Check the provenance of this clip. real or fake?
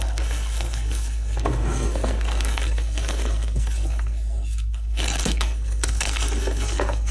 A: fake